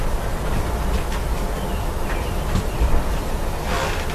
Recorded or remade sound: recorded